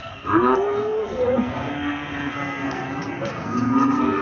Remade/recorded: remade